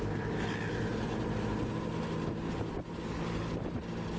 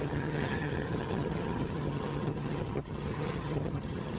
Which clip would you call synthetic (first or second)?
second